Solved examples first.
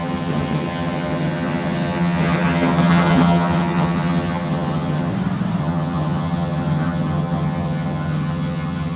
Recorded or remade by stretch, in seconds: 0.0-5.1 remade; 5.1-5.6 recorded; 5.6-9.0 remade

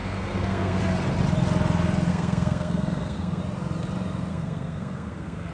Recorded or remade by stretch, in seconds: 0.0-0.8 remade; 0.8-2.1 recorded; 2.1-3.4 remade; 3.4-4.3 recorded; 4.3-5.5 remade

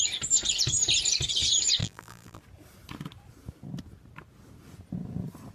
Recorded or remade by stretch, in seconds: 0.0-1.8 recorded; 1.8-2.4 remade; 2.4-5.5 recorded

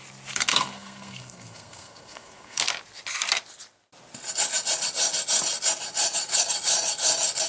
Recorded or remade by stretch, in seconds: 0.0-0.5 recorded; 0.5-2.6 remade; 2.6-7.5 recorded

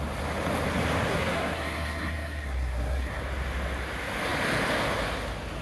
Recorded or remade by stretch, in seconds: 0.0-1.1 recorded; 1.1-3.2 remade; 3.2-5.6 recorded